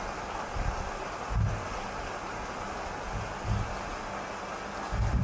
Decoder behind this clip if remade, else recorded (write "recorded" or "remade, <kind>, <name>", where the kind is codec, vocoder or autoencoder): recorded